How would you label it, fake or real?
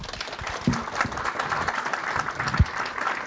real